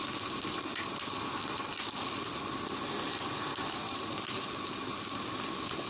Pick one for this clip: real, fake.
real